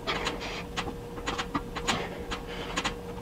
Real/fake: real